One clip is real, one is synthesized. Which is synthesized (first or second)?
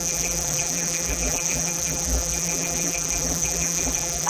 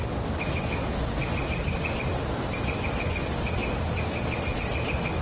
first